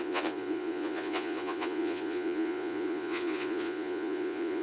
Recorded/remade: remade